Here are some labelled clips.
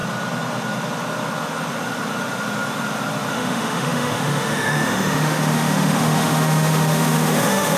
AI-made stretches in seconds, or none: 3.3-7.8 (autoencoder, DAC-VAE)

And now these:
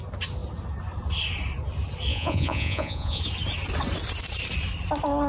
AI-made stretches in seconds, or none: 2.1-3.2 (vocoder, Vocos)

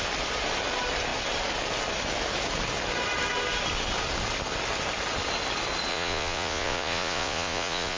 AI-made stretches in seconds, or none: 5.9-8.0 (vocoder, Vocos)